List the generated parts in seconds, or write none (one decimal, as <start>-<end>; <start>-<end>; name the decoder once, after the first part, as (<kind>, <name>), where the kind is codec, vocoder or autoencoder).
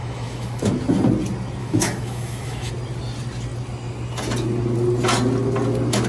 0.0-0.6 (autoencoder, DAC-VAE); 1.6-2.7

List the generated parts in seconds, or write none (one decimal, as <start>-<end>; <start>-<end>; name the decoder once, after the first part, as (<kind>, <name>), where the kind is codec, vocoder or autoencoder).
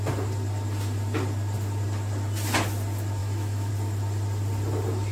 3.2-3.7 (autoencoder, DAC-VAE)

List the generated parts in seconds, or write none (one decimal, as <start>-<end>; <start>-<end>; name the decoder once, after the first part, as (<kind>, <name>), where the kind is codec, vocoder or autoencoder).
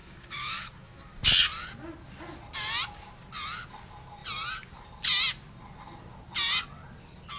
0.0-1.1 (autoencoder, DAC-VAE)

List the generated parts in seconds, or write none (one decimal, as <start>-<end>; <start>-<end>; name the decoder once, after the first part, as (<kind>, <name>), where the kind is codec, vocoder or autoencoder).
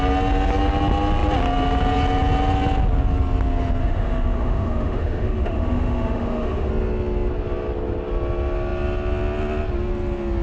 3.8-6.7 (autoencoder, DAC-VAE)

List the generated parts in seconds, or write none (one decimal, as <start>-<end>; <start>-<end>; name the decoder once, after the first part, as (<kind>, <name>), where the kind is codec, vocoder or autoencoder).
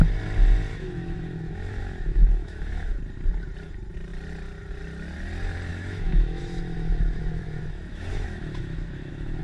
0.7-3.0 (autoencoder, DAC-VAE); 5.7-9.4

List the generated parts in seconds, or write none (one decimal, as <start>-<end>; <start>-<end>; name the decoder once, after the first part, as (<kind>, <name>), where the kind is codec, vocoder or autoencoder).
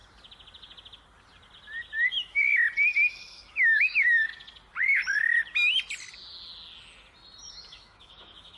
2.1-2.5 (autoencoder, DAC-VAE); 3.1-4.3; 7.5-8.6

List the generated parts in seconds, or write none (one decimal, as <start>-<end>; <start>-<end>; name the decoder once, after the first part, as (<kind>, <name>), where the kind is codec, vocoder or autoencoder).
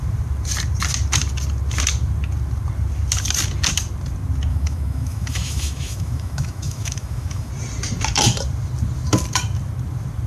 4.5-7.5 (autoencoder, DAC-VAE)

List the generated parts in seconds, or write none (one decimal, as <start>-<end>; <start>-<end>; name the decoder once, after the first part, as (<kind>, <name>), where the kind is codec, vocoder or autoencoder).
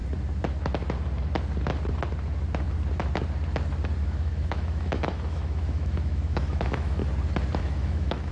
4.0-7.0 (autoencoder, DAC-VAE); 7.6-8.3